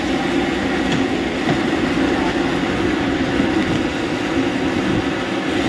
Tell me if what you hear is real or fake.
real